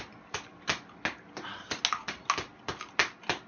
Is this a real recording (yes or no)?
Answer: yes